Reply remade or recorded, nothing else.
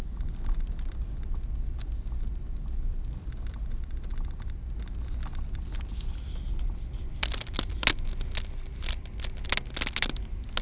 recorded